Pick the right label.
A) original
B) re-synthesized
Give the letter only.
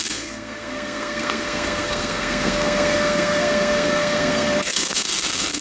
B